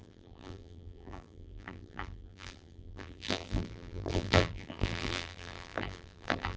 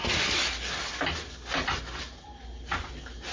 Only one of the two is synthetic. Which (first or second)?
first